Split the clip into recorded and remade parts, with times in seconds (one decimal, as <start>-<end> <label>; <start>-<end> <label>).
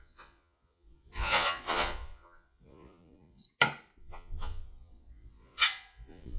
0.0-3.4 remade; 3.4-4.0 recorded; 4.0-6.4 remade